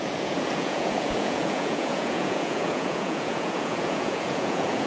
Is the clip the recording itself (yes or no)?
no